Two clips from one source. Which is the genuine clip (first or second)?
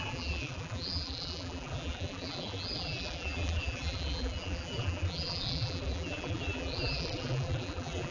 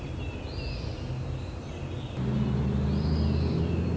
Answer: second